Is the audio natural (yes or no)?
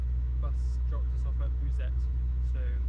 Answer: no